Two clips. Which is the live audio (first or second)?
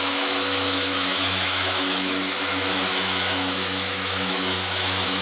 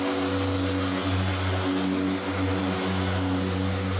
second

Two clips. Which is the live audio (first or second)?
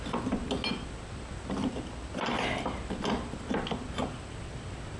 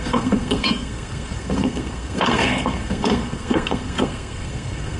first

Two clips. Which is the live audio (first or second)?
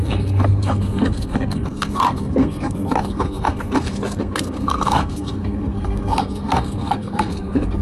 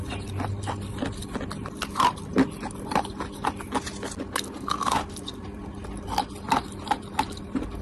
second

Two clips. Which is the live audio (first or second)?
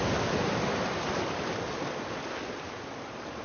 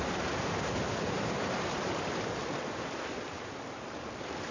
first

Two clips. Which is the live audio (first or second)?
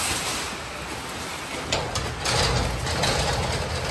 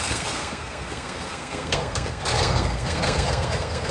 first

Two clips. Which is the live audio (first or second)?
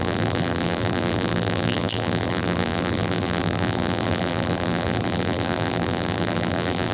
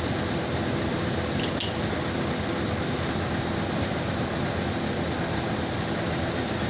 second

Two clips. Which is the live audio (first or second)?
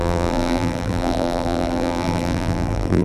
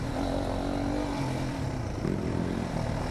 second